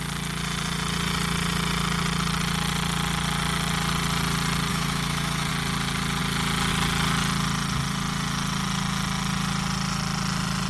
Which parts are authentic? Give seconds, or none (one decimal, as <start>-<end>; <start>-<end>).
0.0-4.7; 5.5-10.7